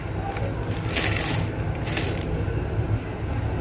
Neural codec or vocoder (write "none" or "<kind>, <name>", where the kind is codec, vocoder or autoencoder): none